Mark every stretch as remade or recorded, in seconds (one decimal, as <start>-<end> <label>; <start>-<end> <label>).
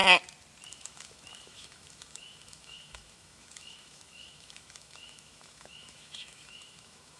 0.0-0.7 recorded; 0.7-7.2 remade